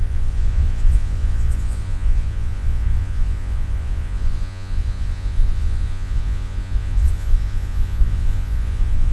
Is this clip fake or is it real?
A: fake